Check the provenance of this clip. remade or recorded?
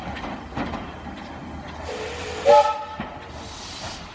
recorded